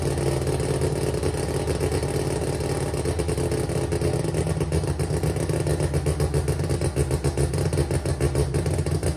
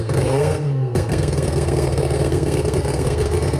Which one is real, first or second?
first